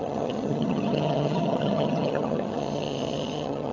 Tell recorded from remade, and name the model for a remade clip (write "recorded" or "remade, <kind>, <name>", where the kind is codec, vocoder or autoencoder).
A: remade, vocoder, HiFi-GAN